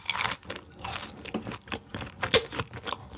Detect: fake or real real